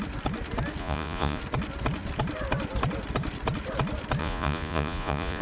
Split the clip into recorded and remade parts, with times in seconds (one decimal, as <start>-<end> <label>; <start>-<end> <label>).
0.0-0.8 recorded; 0.8-1.4 remade; 1.4-4.2 recorded; 4.2-5.4 remade